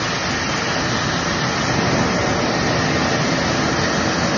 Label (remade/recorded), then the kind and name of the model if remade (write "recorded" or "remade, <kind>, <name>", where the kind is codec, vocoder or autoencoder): recorded